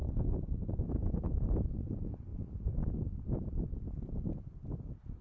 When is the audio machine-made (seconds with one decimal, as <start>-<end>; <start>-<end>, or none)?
0.0-0.8